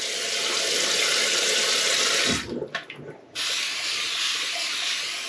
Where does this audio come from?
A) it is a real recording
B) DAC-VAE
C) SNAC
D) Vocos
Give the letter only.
A